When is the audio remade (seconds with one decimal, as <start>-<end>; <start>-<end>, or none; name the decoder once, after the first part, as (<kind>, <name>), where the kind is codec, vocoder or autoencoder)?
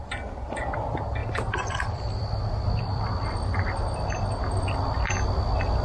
none